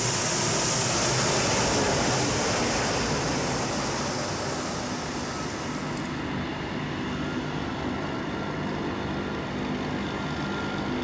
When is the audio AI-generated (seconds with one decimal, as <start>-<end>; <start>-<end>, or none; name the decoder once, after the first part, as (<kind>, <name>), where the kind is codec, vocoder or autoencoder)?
none